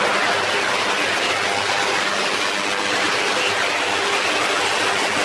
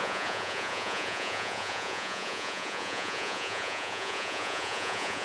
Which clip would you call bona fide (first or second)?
first